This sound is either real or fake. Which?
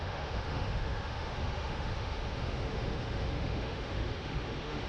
fake